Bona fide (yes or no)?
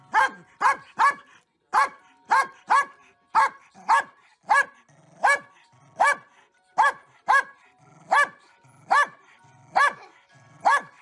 yes